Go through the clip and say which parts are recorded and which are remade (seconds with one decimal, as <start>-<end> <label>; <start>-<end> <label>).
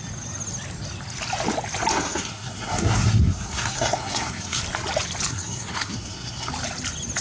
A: 0.0-1.9 recorded; 1.9-4.6 remade; 4.6-5.3 recorded; 5.3-6.5 remade; 6.5-7.2 recorded